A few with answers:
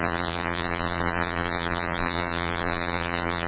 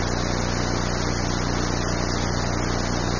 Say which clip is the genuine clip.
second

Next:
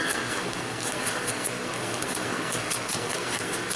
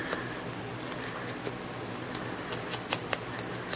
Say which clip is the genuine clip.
second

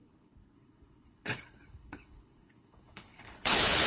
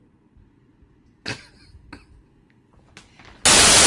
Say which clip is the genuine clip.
second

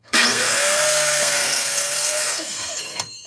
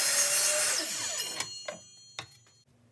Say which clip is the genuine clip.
second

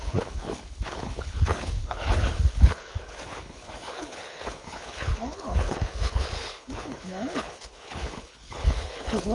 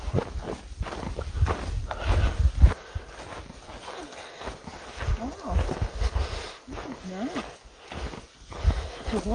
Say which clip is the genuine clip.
second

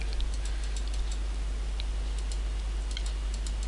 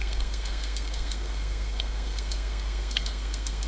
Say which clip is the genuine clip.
first